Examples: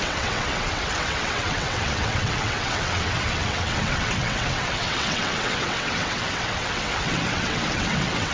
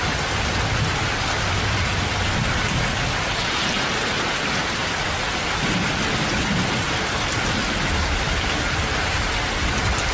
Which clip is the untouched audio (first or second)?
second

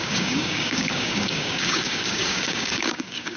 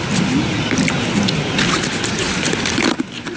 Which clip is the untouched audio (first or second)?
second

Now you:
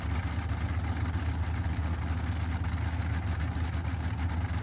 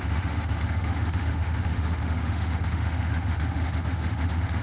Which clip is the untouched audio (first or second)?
first